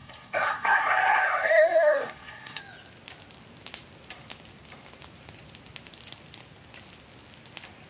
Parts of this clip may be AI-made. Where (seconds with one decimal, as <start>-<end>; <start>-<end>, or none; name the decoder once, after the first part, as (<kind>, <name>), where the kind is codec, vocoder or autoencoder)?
0.0-2.6 (codec, SNAC)